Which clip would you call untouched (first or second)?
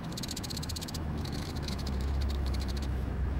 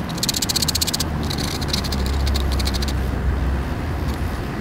second